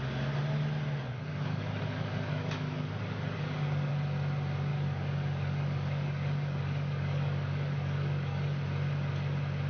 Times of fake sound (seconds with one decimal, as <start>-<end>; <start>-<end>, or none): 1.3-3.9; 4.7-8.6